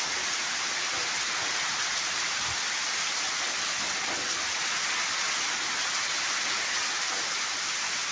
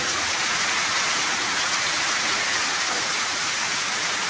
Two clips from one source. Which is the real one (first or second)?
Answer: first